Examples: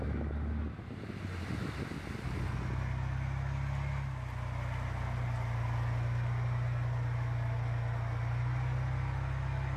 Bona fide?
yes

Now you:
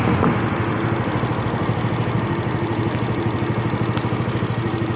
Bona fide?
yes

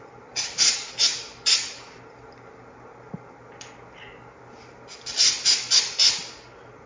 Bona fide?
yes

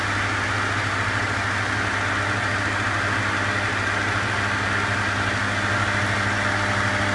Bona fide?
yes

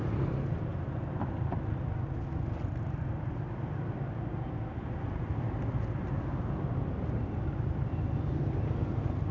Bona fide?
yes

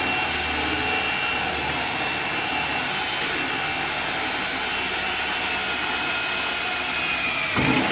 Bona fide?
yes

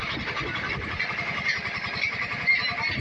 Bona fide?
yes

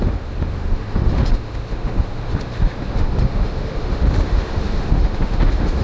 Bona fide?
no